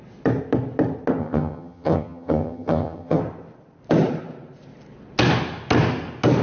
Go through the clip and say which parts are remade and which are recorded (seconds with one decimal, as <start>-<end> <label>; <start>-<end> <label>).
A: 0.0-1.2 recorded; 1.2-3.2 remade; 3.2-6.4 recorded